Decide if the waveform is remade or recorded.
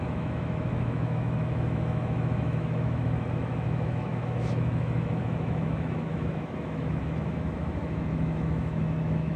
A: remade